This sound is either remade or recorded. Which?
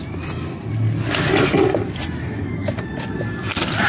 recorded